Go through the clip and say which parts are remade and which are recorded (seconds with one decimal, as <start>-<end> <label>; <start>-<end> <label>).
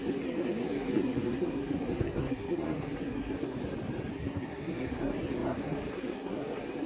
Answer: 0.0-3.6 remade; 3.6-4.1 recorded; 4.1-6.9 remade